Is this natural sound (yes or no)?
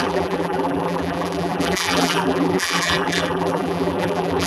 no